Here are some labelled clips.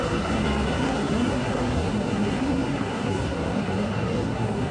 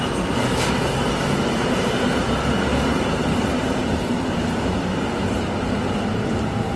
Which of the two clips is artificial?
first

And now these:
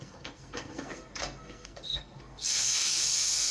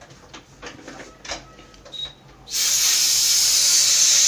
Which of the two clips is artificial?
first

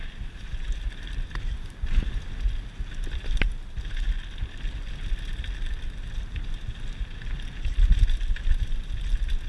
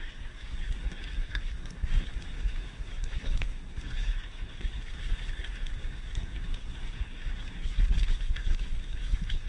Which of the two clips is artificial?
second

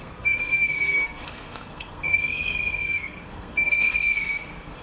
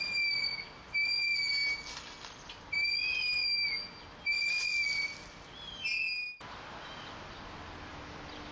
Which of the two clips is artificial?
first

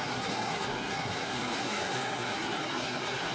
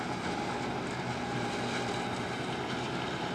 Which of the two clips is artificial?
first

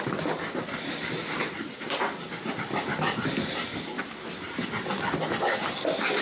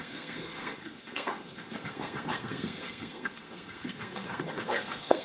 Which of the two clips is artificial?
second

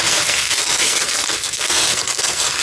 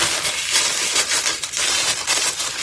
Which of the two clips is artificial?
first